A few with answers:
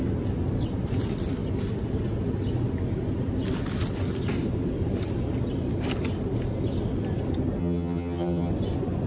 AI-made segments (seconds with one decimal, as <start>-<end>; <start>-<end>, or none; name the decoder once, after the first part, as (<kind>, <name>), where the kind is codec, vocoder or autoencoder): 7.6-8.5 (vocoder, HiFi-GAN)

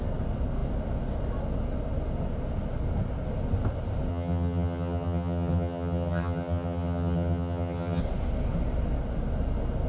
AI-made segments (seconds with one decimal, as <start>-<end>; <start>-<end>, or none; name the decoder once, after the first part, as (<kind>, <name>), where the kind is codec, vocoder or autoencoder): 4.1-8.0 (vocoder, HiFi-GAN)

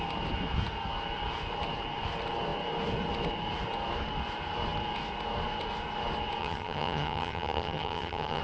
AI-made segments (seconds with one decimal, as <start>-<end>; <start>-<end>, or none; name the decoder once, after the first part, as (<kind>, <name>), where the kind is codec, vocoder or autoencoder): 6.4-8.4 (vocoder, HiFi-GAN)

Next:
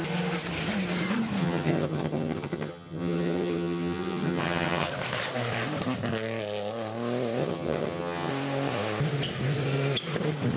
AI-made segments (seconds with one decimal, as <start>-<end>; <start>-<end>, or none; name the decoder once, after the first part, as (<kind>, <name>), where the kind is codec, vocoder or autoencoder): 1.4-4.9 (vocoder, HiFi-GAN); 7.4-8.3

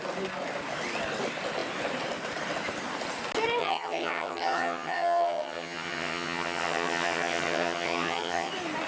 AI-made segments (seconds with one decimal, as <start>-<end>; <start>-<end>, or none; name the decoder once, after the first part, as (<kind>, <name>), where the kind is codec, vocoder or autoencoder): 3.6-8.5 (vocoder, HiFi-GAN)

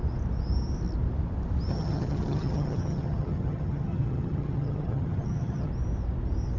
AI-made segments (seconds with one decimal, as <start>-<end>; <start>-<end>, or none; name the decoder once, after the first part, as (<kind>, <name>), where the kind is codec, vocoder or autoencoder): 1.7-5.7 (vocoder, HiFi-GAN)

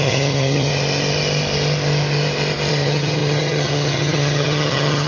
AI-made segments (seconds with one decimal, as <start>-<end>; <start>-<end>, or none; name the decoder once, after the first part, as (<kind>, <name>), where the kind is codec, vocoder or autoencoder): 0.0-0.7 (vocoder, HiFi-GAN); 2.7-5.1